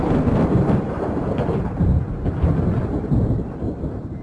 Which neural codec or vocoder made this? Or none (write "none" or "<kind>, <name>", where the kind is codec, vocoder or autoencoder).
vocoder, BigVGAN v2